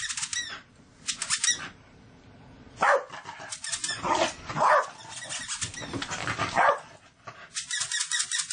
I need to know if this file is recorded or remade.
recorded